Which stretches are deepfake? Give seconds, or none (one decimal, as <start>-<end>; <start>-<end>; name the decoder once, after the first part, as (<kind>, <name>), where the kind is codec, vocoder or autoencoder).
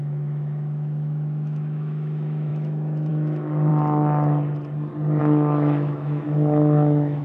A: 0.0-3.7 (autoencoder, DAC-VAE); 5.2-7.2